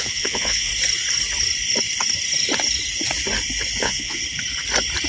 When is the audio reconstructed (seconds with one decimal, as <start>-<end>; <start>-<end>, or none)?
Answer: 0.0-0.7; 3.8-4.2